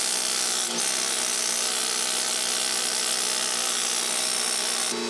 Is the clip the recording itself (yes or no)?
yes